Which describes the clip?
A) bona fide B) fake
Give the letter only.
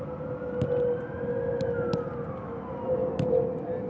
A